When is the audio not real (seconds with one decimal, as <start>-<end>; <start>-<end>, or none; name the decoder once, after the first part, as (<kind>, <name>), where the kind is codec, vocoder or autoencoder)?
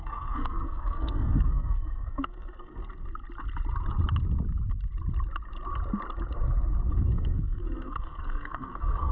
0.0-2.8 (codec, SNAC); 6.9-9.1